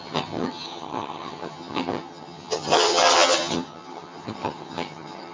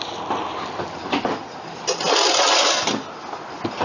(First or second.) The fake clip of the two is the first